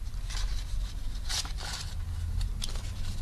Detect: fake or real real